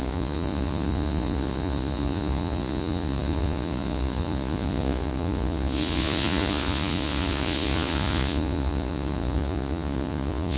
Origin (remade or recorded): remade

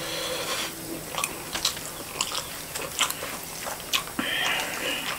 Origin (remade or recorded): recorded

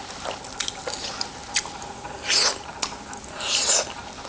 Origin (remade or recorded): recorded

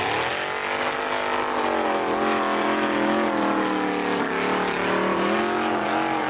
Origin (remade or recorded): recorded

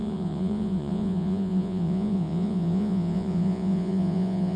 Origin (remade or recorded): remade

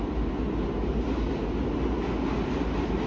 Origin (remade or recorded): recorded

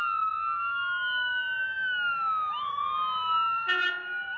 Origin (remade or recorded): recorded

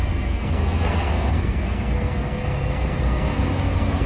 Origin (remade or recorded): remade